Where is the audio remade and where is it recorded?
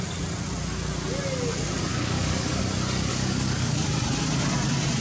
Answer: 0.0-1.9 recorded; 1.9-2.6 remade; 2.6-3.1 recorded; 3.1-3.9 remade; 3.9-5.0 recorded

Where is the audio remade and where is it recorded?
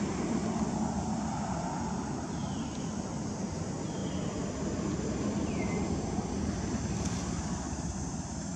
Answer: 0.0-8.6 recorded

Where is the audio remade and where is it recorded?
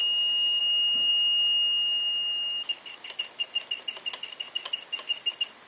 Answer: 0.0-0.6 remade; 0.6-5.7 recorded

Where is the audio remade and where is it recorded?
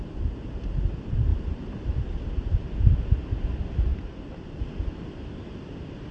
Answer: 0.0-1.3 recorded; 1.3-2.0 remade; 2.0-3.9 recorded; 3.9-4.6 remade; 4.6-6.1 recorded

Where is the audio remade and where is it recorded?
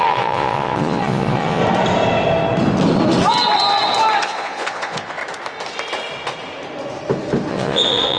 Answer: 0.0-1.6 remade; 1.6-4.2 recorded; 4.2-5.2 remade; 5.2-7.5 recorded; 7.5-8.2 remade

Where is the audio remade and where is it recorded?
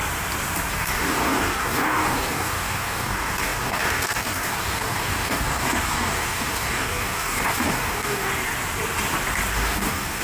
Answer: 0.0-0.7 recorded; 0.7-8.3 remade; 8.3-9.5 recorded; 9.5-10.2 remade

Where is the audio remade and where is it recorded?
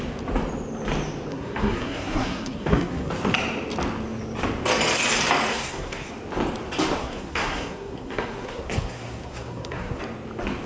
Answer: 0.0-1.3 recorded; 1.3-3.1 remade; 3.1-5.5 recorded; 5.5-6.1 remade; 6.1-7.0 recorded; 7.0-10.0 remade; 10.0-10.7 recorded